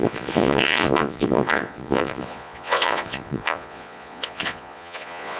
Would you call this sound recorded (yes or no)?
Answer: no